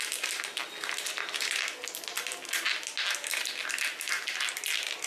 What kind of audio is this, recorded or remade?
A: recorded